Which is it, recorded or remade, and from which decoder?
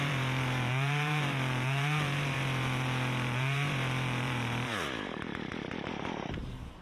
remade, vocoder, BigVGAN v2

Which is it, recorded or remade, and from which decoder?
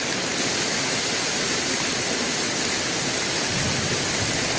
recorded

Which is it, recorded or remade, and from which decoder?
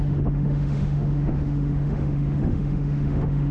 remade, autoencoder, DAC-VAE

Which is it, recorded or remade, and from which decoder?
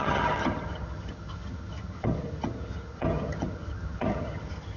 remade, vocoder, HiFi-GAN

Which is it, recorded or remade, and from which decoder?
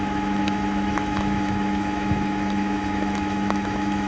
remade, autoencoder, DAC-VAE